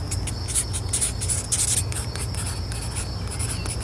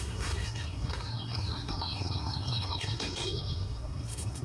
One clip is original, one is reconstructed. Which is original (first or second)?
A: first